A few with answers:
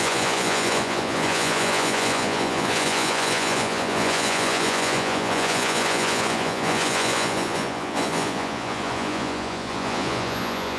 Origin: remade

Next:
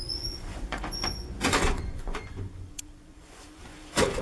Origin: remade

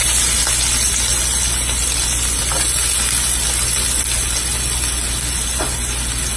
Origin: recorded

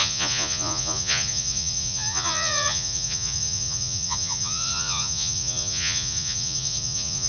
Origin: remade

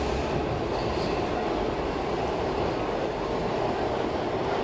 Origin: recorded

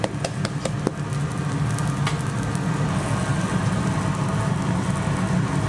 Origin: recorded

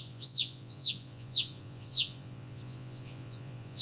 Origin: remade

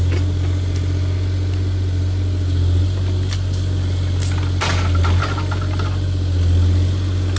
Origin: recorded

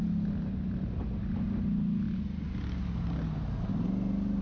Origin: recorded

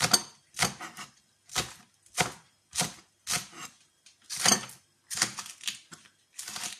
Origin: recorded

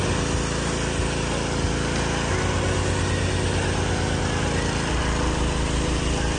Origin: recorded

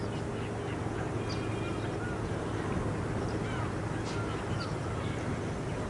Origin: recorded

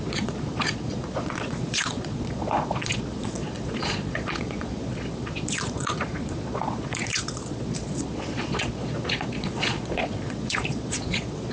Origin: remade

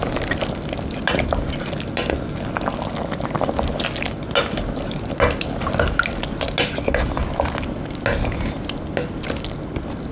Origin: recorded